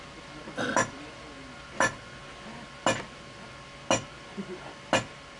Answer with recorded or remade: recorded